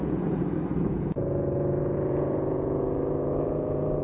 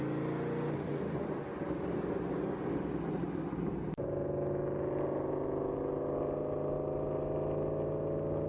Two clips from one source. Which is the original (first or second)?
second